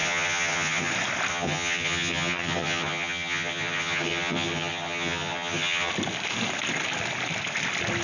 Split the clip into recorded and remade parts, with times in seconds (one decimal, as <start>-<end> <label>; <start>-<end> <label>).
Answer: 0.0-0.9 remade; 0.9-1.3 recorded; 1.3-5.9 remade; 5.9-8.0 recorded